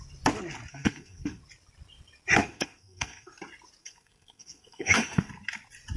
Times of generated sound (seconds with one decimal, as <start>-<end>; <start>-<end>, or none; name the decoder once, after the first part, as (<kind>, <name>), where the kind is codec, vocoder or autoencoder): 0.7-1.4 (codec, SNAC); 2.4-3.3; 3.8-5.3